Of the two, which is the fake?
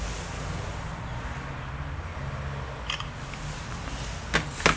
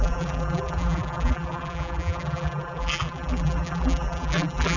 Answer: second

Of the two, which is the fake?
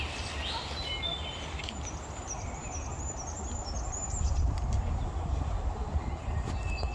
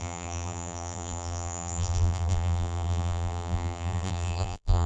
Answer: second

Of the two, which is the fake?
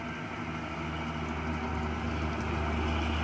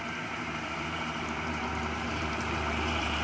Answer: second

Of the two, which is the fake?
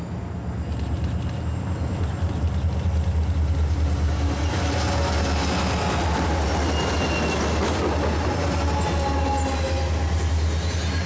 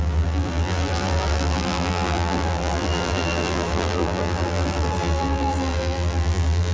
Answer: second